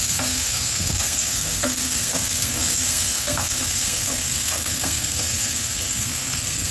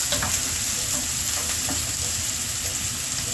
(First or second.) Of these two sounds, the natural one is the second